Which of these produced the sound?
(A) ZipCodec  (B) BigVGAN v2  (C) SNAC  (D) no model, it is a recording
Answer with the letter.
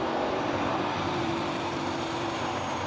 B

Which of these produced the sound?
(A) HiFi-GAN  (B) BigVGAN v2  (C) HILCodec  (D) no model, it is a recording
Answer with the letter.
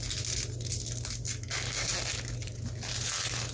D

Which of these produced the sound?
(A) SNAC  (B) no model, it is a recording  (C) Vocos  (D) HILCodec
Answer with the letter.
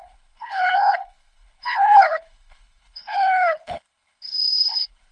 D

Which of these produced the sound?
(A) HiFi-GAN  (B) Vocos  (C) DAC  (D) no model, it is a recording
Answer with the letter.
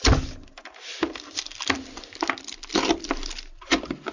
D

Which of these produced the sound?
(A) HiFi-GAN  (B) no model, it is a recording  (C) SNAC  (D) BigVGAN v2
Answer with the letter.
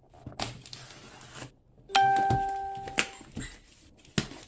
B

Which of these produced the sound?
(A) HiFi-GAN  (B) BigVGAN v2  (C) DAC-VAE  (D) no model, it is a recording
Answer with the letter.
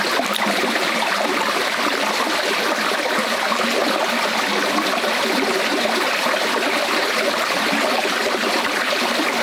B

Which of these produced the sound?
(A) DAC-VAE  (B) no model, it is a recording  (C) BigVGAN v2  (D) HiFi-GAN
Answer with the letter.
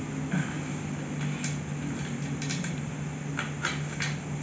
B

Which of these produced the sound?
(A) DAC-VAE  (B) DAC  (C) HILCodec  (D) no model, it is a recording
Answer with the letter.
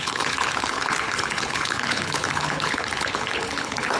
C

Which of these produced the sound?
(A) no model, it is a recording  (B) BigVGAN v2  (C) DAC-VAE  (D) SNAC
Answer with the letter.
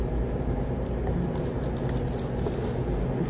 A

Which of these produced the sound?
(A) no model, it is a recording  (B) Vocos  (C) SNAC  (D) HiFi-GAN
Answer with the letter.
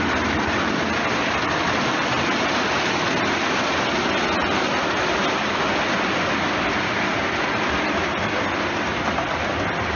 A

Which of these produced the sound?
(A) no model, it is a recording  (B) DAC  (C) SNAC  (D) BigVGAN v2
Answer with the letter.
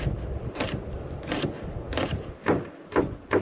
A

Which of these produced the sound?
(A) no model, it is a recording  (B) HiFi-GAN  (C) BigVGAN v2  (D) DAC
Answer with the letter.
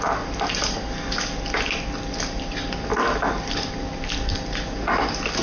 A